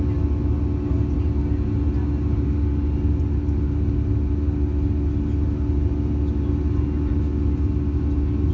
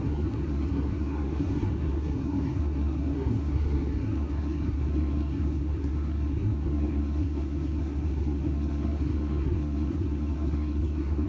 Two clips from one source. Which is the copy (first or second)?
second